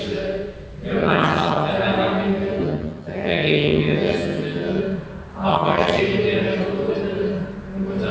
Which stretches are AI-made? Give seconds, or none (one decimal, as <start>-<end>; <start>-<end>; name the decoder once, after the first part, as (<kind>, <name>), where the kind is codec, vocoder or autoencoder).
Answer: 1.0-1.7 (vocoder, HiFi-GAN); 2.6-4.8; 5.5-6.0